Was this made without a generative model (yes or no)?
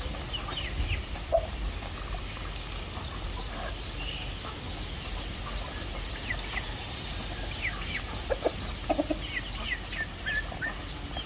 yes